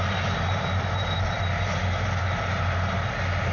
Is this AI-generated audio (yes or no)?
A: no